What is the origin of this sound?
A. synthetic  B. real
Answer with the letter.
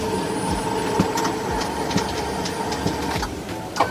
B